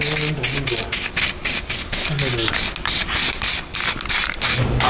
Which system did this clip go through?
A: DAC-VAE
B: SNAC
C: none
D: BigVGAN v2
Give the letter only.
C